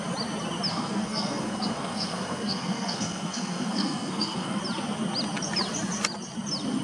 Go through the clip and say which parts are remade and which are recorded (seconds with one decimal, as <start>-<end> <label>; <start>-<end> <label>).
0.0-0.7 recorded; 0.7-4.6 remade; 4.6-6.8 recorded